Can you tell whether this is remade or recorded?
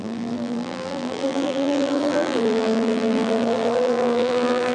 remade